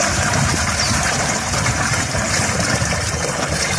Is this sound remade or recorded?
remade